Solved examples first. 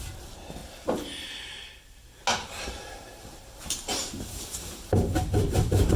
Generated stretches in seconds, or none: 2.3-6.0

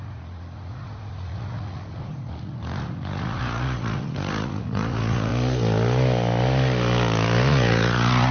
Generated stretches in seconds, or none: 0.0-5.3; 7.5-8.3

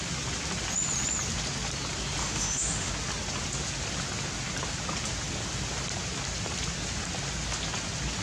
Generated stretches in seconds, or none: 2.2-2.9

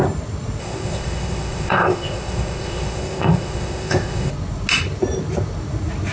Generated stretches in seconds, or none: 0.6-4.3

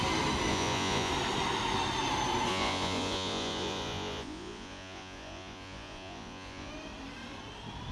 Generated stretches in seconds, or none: 0.5-1.1; 2.5-6.7

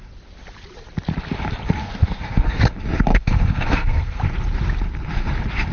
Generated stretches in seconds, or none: 1.8-2.6; 3.1-4.2

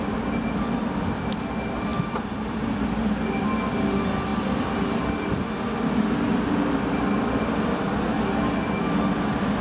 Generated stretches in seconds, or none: none